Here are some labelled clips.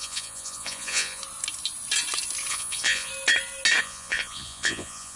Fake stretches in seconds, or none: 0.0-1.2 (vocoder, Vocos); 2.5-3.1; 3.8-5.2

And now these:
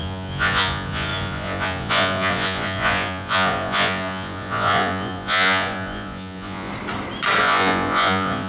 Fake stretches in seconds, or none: 0.0-6.7 (vocoder, Vocos); 7.4-8.5

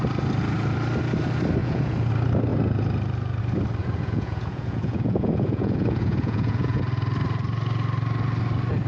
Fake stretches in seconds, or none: 1.6-2.1 (vocoder, Vocos); 3.8-6.8

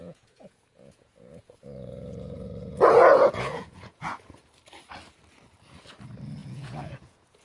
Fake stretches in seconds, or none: 0.0-4.4 (vocoder, Vocos); 6.4-7.4

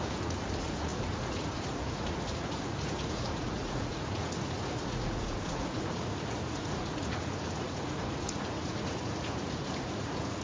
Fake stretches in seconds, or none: 0.0-10.4 (vocoder, Vocos)

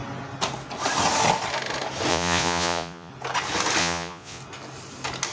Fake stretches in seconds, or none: 2.1-3.1 (vocoder, Vocos); 3.8-4.4

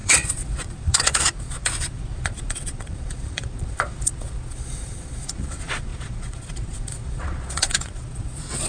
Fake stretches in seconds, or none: 0.0-8.7 (vocoder, Vocos)